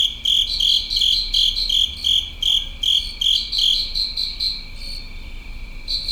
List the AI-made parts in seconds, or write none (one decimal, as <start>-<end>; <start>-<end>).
none